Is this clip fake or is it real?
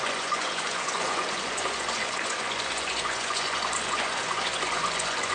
fake